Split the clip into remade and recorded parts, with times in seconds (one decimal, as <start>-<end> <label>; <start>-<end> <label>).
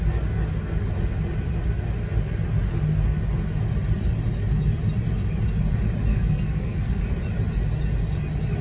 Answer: 0.0-6.1 recorded; 6.1-7.0 remade; 7.0-8.6 recorded